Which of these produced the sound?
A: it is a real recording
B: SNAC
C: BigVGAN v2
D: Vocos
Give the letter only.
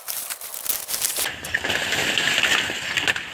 A